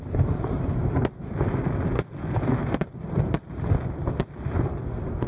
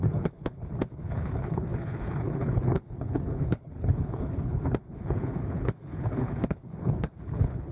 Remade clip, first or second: second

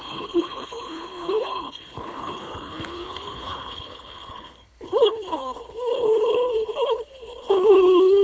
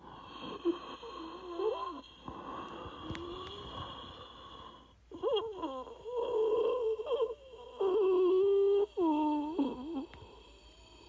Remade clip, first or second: first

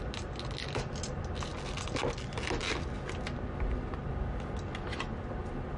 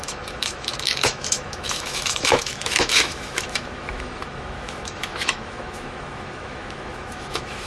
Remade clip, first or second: second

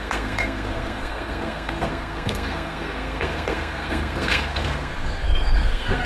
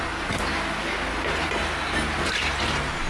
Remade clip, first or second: first